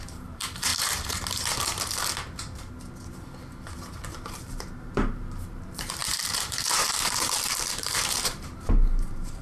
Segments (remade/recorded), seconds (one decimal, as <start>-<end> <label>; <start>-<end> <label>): 0.0-0.7 remade; 0.7-4.3 recorded; 4.3-9.4 remade